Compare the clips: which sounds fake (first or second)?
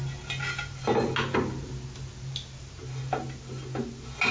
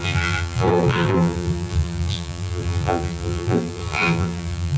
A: second